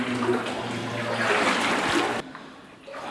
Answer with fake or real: real